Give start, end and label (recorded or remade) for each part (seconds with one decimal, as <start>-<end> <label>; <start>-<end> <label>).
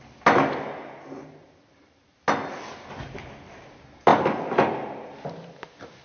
0.0-6.0 recorded